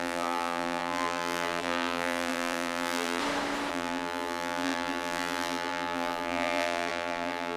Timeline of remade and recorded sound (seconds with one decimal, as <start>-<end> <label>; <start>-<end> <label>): 0.0-3.2 remade; 3.2-3.7 recorded; 3.7-7.6 remade